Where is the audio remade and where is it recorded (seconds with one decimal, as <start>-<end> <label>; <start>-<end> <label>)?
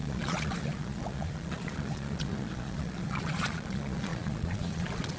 0.0-5.2 remade